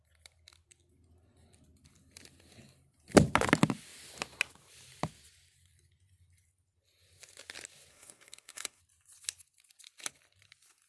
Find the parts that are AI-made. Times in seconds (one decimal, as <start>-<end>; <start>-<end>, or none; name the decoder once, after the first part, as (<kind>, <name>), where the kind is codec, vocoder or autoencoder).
7.9-8.8 (codec, SNAC)